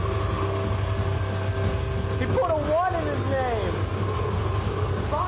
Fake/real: real